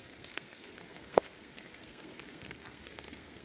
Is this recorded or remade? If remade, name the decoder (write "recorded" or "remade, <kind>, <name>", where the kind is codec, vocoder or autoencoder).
remade, codec, SNAC